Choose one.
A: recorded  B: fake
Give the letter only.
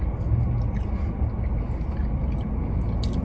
A